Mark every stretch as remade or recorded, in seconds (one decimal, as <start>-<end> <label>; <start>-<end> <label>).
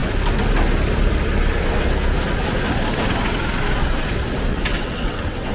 0.0-4.5 recorded; 4.5-5.5 remade